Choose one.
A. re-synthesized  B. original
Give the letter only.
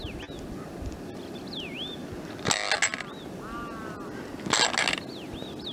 B